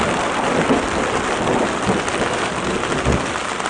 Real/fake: real